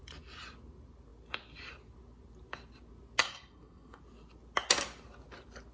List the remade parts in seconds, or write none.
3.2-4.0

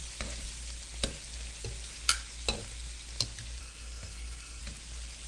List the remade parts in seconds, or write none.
3.6-4.6

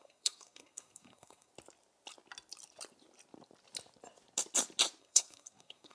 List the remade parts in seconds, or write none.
0.0-1.5; 5.0-5.9

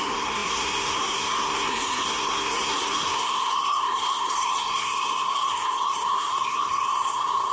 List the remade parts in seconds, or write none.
0.0-7.5

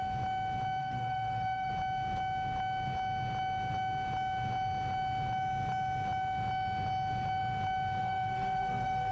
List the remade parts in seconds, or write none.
0.8-1.7; 8.0-9.1

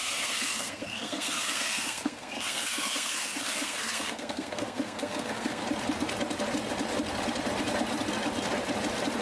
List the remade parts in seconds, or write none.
0.0-5.6

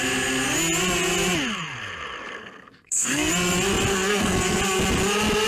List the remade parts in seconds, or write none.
2.4-3.3; 3.9-4.6